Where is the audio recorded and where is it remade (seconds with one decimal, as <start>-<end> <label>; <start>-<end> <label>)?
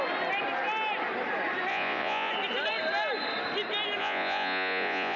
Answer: 0.0-1.7 recorded; 1.7-2.3 remade; 2.3-4.0 recorded; 4.0-5.2 remade